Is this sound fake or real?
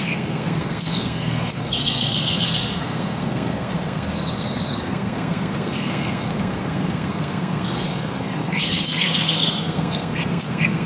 fake